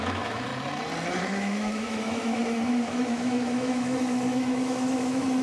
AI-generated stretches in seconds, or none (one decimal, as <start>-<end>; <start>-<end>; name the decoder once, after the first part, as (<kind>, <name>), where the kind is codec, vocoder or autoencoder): 0.0-0.5 (autoencoder, DAC-VAE); 1.2-5.4